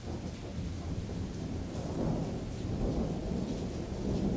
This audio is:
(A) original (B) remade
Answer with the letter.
A